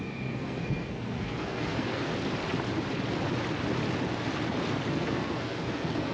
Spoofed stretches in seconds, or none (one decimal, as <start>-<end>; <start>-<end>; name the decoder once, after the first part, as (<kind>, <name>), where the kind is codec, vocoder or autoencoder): 0.0-2.1 (codec, SNAC); 4.9-6.1